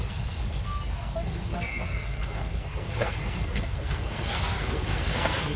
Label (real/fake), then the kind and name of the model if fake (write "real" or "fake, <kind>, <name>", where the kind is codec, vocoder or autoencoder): fake, codec, SNAC